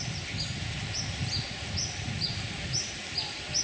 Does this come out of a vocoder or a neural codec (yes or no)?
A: no